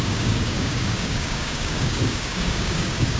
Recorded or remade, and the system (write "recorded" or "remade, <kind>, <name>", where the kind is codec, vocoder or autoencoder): remade, codec, DAC